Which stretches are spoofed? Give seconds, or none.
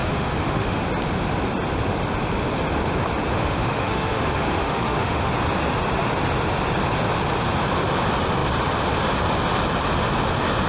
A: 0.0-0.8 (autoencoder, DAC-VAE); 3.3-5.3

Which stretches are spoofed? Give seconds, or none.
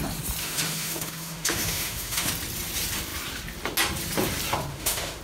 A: 0.4-2.3 (autoencoder, DAC-VAE); 4.7-5.2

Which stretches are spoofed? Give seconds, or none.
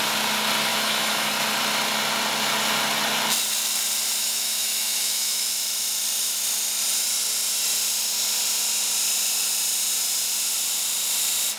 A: 0.7-1.3 (autoencoder, DAC-VAE); 4.2-5.5